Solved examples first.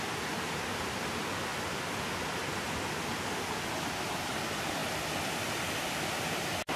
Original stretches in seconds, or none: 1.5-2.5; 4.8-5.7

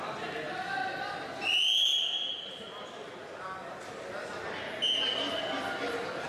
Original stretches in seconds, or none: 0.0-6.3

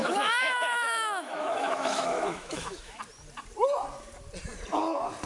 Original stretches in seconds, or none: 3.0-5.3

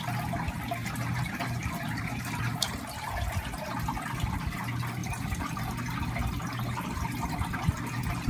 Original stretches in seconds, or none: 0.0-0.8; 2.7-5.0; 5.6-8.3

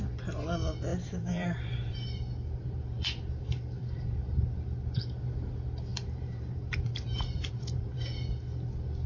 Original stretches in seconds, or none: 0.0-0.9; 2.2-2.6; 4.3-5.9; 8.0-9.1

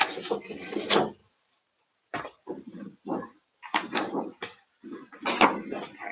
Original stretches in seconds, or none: 0.0-1.2; 4.9-6.1

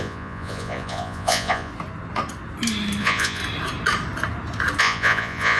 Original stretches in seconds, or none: 1.7-3.0; 3.4-4.8